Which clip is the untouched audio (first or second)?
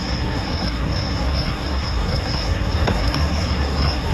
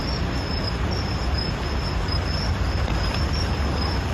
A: second